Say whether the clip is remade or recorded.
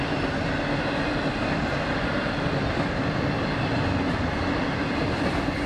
recorded